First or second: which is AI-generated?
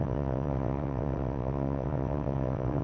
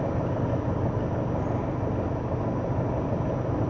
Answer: first